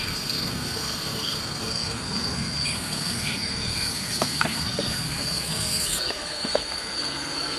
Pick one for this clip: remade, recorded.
remade